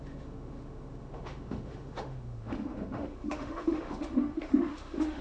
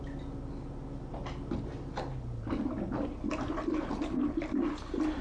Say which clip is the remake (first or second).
first